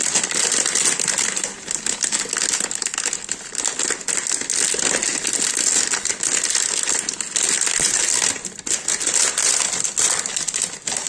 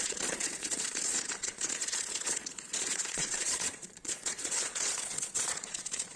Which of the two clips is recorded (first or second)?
first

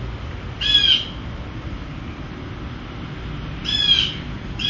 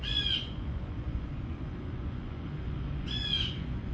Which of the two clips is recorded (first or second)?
first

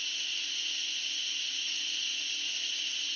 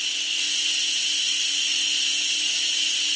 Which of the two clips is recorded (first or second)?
second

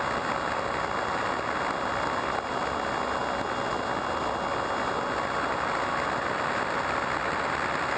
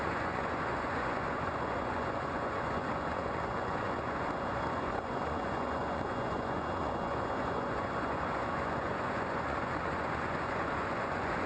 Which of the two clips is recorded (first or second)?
first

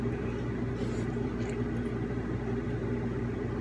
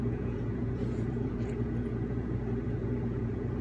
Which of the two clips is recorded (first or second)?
first